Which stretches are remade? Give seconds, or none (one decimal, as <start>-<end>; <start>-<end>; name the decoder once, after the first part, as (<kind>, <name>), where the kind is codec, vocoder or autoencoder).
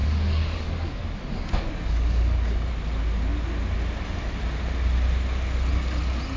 0.0-2.7 (codec, DAC)